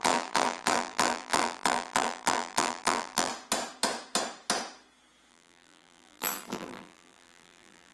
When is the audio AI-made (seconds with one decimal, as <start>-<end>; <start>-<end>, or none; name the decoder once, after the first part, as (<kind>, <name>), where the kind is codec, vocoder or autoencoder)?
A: 0.0-3.3 (vocoder, BigVGAN v2); 5.3-7.9